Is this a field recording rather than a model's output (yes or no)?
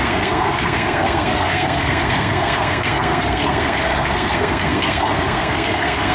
no